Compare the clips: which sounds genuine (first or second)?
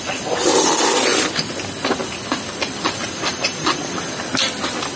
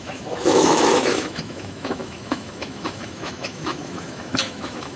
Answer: first